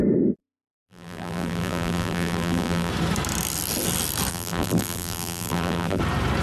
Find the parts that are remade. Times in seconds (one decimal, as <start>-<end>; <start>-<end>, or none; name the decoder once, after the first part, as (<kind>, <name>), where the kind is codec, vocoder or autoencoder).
0.4-2.9 (vocoder, BigVGAN v2); 4.3-6.0